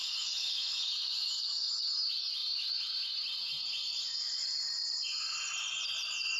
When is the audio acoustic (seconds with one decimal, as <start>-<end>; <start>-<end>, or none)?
1.7-6.4